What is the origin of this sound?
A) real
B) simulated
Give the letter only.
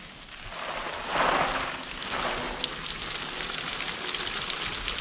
A